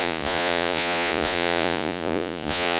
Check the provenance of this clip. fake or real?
fake